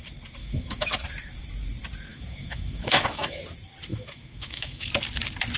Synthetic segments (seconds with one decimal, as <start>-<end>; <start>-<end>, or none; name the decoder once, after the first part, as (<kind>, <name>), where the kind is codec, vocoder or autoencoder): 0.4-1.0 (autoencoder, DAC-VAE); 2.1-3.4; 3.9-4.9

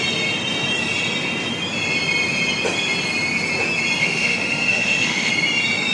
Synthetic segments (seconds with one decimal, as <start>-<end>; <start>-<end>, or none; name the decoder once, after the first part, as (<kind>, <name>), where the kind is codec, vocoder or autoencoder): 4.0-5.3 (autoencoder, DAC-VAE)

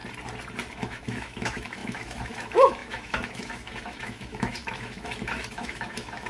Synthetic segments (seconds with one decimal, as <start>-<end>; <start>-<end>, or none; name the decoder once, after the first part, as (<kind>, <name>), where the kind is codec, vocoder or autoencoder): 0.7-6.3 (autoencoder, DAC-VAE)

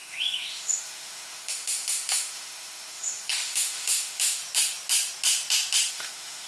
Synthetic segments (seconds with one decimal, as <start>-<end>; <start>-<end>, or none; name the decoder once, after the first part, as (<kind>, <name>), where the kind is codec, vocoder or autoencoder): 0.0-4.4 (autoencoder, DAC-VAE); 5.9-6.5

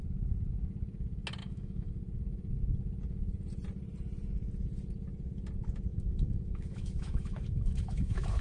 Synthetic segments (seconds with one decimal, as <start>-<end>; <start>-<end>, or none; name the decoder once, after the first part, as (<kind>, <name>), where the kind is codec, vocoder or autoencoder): 1.4-1.9 (autoencoder, DAC-VAE); 5.9-8.4